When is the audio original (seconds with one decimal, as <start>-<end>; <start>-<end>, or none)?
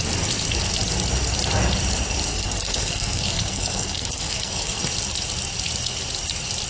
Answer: 0.0-2.3; 4.8-6.7